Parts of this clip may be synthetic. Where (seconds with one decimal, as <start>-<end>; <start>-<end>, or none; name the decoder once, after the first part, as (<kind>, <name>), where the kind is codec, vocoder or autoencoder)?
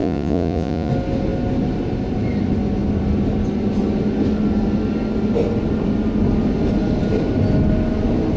0.0-0.9 (vocoder, Vocos)